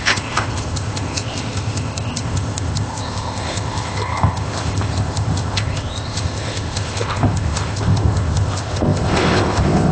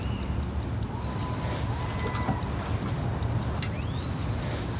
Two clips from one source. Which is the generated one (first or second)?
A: first